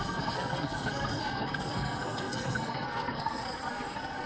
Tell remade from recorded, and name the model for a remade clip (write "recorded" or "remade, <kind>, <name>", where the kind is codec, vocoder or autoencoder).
remade, codec, SNAC